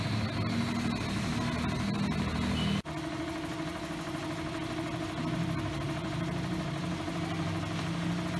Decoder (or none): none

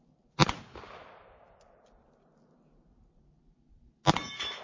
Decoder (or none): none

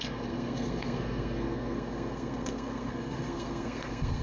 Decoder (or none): codec, SNAC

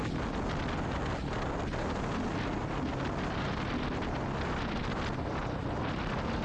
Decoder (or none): none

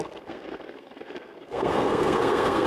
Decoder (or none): codec, SNAC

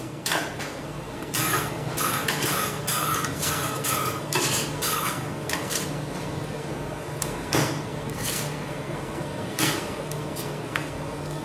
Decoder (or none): codec, SNAC